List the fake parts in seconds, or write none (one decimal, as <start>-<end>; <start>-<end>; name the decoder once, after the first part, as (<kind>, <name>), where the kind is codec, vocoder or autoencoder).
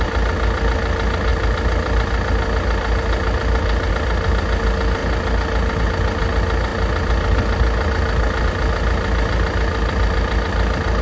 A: none